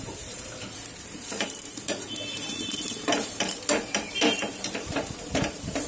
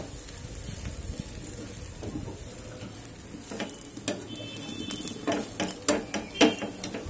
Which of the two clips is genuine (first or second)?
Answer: second